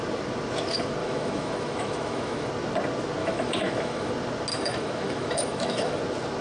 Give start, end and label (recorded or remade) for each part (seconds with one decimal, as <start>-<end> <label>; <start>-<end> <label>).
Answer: 0.0-1.0 recorded; 1.0-2.5 remade; 2.5-3.2 recorded; 3.2-4.1 remade; 4.1-4.5 recorded; 4.5-6.0 remade; 6.0-6.4 recorded